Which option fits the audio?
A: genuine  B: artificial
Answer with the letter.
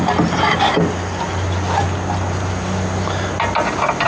A